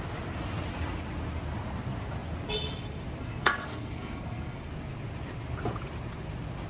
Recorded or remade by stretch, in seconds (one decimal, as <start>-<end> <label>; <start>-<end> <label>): 0.0-3.2 recorded; 3.2-4.7 remade; 4.7-6.7 recorded